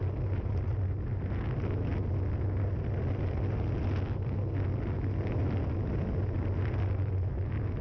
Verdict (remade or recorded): recorded